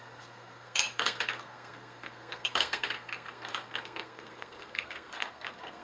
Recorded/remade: remade